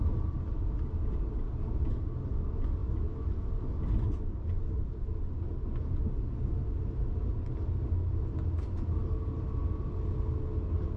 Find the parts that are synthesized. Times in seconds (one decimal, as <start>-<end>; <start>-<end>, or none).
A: 2.8-3.5